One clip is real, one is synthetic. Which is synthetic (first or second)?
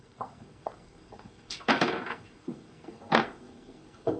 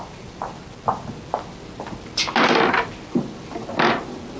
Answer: first